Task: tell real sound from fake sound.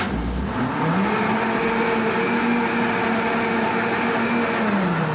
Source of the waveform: real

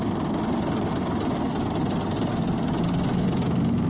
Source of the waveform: real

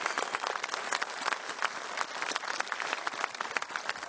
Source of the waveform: real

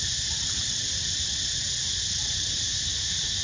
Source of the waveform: real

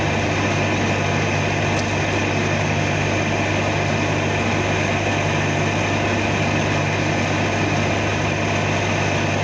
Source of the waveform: real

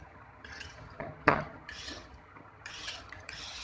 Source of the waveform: fake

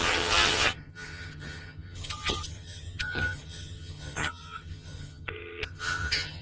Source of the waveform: fake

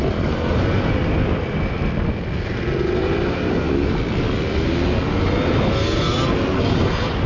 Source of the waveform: real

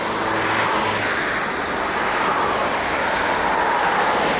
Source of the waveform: real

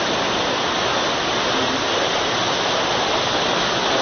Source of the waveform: real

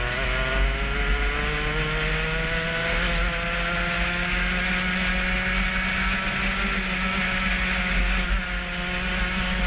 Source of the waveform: real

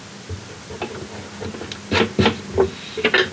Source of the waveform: real